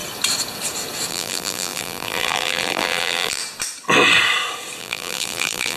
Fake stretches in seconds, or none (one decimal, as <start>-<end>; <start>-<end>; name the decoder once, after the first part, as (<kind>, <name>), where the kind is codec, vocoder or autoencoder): 1.1-3.4 (vocoder, BigVGAN v2); 4.8-5.8